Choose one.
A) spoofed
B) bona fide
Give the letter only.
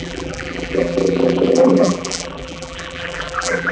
A